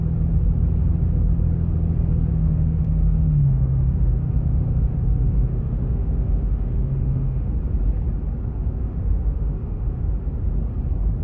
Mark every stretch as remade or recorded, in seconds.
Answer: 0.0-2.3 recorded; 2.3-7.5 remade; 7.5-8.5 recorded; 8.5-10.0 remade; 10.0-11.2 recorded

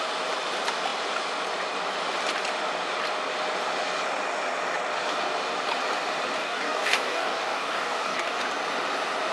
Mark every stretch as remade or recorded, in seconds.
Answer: 0.0-6.4 recorded; 6.4-8.4 remade; 8.4-9.3 recorded

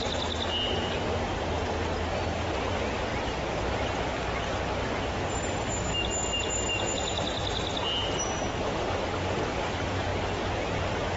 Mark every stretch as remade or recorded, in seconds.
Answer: 0.0-11.2 recorded

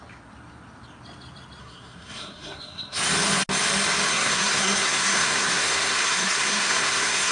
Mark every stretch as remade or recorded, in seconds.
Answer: 0.0-1.6 recorded; 1.6-3.0 remade; 3.0-4.1 recorded; 4.1-7.3 remade

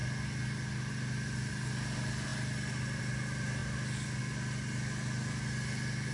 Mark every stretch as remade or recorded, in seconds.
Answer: 0.0-6.1 recorded

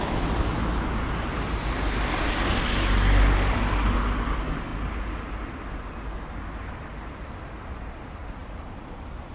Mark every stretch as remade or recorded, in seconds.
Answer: 0.0-8.4 recorded; 8.4-9.3 remade

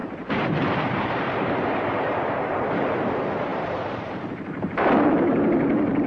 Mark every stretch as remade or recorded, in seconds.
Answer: 0.0-3.1 remade; 3.1-3.5 recorded; 3.5-4.9 remade; 4.9-6.1 recorded